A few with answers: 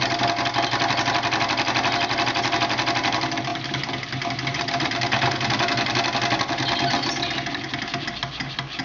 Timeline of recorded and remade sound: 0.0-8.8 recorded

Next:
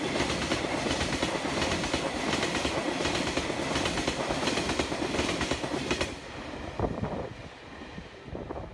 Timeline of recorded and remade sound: 0.0-8.7 recorded

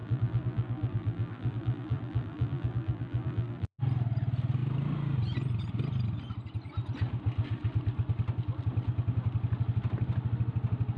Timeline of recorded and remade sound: 0.0-3.8 remade; 3.8-11.0 recorded

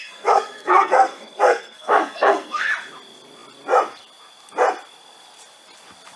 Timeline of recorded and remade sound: 0.0-2.7 remade; 2.7-6.2 recorded

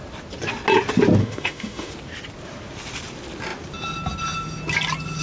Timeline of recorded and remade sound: 0.0-1.2 recorded; 1.2-1.9 remade; 1.9-5.2 recorded

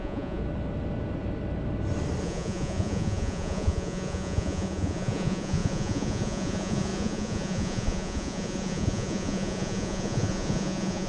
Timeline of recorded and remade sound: 0.0-0.4 remade; 0.4-2.2 recorded; 2.2-11.1 remade

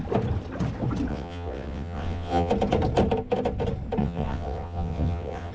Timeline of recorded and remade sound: 0.0-1.1 recorded; 1.1-2.5 remade; 2.5-4.0 recorded; 4.0-5.5 remade

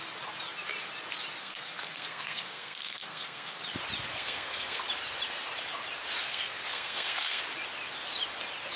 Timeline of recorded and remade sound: 0.0-1.4 recorded; 1.4-3.6 remade; 3.6-4.1 recorded; 4.1-4.8 remade; 4.8-6.2 recorded; 6.2-7.4 remade; 7.4-8.8 recorded